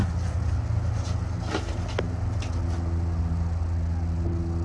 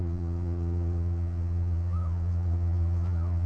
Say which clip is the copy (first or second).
second